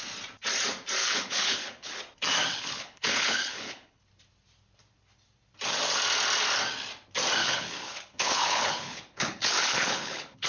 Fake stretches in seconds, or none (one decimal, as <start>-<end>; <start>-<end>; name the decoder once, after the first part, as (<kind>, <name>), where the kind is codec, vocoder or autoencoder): 1.0-2.0 (codec, HILCodec); 2.5-4.0; 7.4-10.5